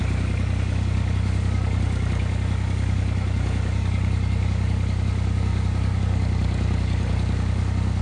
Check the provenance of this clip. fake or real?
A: fake